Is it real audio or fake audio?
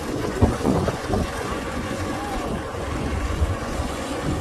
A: fake